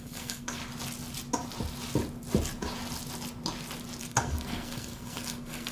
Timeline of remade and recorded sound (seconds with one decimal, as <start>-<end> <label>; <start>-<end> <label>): 0.0-0.6 remade; 0.6-4.0 recorded; 4.0-5.7 remade